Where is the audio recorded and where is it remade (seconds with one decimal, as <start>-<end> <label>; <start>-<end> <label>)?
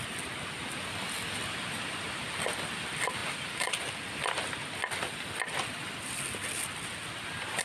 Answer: 0.0-7.6 recorded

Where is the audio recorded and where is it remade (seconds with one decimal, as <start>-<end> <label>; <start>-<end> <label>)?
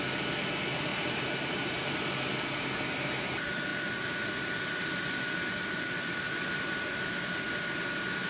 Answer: 0.0-0.9 recorded; 0.9-2.0 remade; 2.0-3.7 recorded; 3.7-7.4 remade; 7.4-8.3 recorded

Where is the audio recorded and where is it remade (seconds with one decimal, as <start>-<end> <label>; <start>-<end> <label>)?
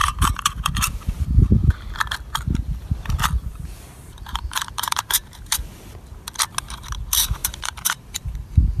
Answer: 0.0-1.9 remade; 1.9-3.5 recorded; 3.5-5.5 remade; 5.5-7.4 recorded; 7.4-8.3 remade; 8.3-8.8 recorded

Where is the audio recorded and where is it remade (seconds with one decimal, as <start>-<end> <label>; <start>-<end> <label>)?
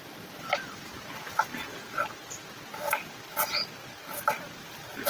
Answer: 0.0-1.5 remade; 1.5-2.7 recorded; 2.7-3.6 remade; 3.6-5.1 recorded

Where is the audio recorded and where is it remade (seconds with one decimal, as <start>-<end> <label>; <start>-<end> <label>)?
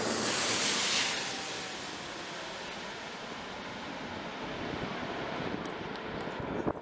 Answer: 0.0-6.8 recorded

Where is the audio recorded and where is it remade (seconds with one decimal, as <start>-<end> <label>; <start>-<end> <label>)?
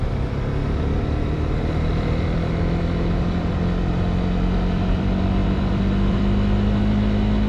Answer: 0.0-7.5 remade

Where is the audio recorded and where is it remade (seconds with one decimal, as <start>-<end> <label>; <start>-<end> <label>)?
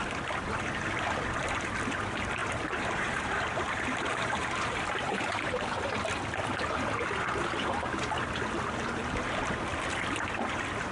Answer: 0.0-2.4 recorded; 2.4-5.8 remade; 5.8-10.9 recorded